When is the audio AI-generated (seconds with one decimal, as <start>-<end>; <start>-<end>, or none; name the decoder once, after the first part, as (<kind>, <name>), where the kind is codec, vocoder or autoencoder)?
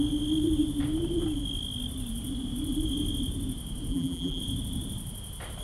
3.9-4.4 (vocoder, BigVGAN v2)